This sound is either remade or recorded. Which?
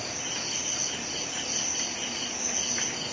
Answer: recorded